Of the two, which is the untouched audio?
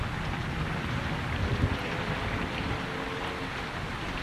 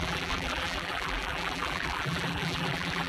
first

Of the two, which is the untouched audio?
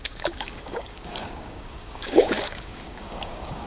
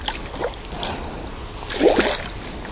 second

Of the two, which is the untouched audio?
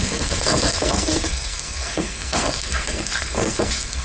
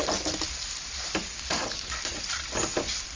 second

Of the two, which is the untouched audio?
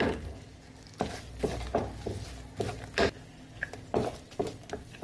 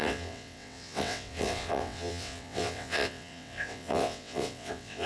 first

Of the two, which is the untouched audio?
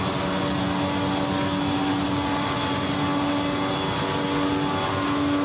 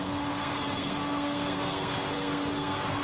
first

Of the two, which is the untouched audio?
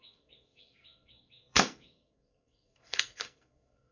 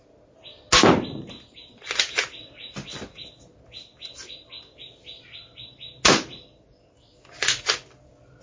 second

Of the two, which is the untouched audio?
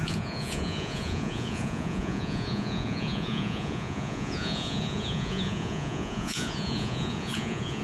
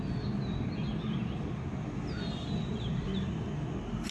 second